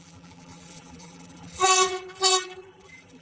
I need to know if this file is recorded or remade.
remade